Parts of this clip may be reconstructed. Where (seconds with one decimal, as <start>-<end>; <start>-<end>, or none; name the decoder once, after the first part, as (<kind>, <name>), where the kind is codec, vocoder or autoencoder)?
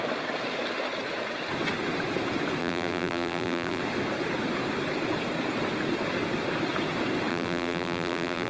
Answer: 2.6-3.8 (vocoder, BigVGAN v2); 7.3-8.5